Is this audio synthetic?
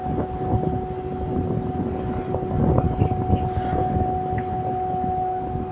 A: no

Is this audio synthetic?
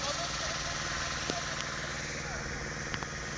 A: no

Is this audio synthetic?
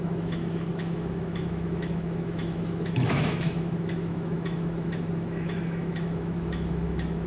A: yes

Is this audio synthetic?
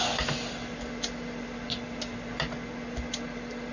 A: no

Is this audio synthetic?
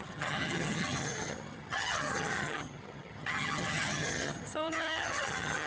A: yes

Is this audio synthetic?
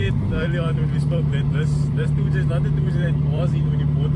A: yes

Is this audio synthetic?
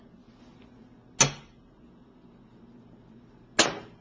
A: no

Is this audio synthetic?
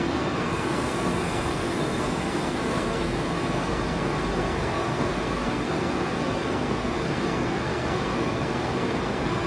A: yes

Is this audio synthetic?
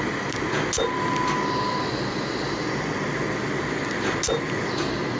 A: no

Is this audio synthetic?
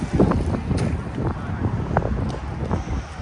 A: no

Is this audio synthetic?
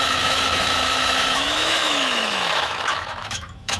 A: yes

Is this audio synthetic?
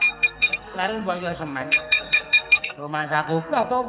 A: yes